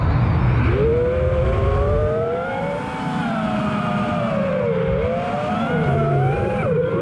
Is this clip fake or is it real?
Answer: real